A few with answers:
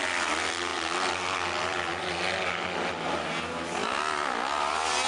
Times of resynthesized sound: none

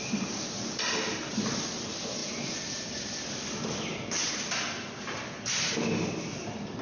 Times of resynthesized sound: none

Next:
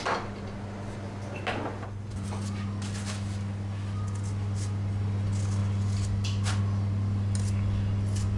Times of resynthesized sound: none

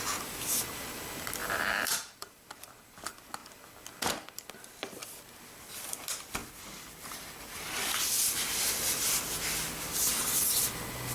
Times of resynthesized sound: 1.4-2.7

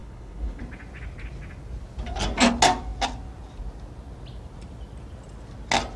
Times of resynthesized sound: 0.0-0.6